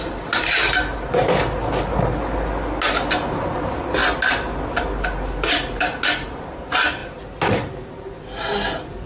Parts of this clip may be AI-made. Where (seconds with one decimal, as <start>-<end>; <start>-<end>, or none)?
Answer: none